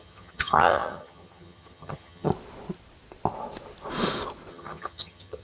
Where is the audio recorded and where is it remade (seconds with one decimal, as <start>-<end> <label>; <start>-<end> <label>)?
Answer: 0.0-2.3 remade; 2.3-4.5 recorded; 4.5-5.4 remade